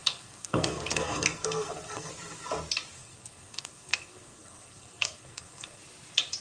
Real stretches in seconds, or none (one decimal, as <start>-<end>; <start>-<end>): 2.1-3.0; 5.8-6.4